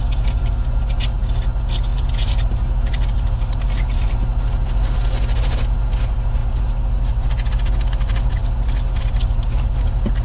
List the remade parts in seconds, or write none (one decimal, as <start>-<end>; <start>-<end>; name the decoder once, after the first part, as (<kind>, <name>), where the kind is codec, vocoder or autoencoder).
none